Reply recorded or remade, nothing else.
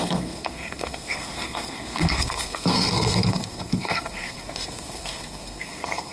remade